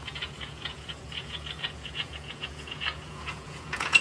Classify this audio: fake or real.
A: fake